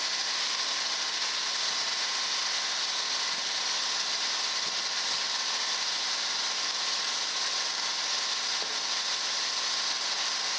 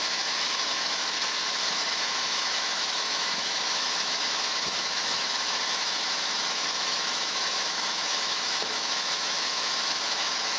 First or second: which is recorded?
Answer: first